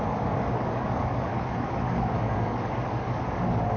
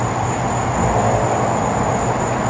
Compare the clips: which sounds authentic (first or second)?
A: second